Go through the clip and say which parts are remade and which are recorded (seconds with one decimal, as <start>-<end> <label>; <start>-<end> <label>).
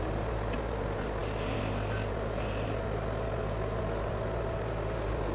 0.0-5.3 recorded